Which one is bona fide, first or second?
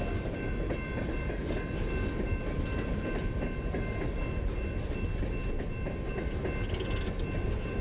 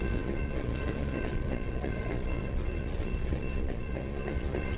first